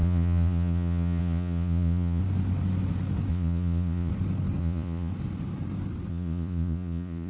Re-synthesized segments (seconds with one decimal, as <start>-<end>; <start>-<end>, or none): 0.0-2.2; 3.3-4.1; 4.6-5.1; 6.1-7.3